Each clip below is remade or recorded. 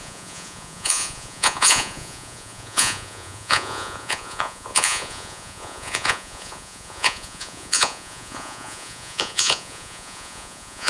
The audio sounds remade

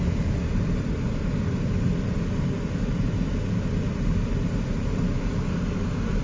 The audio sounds recorded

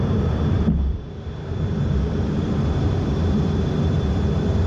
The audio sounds remade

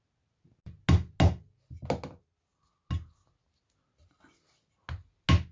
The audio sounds recorded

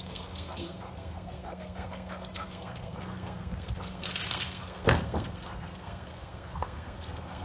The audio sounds remade